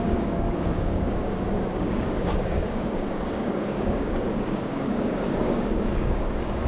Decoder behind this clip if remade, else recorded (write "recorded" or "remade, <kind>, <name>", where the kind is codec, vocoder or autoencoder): remade, codec, DAC